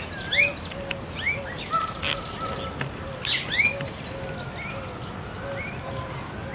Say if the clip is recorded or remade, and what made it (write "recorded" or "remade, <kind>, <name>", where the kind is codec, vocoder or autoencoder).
recorded